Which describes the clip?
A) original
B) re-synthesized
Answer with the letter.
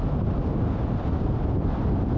A